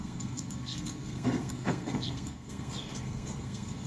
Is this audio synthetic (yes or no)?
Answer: yes